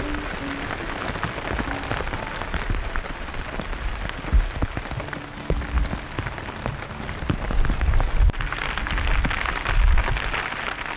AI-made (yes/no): no